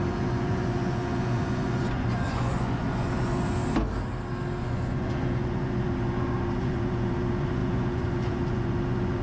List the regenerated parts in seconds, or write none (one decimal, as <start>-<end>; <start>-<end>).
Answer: 0.0-3.6; 4.6-9.2